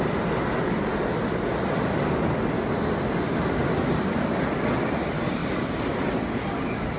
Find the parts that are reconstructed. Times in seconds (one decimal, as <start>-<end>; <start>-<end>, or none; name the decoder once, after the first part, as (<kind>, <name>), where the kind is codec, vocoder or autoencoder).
none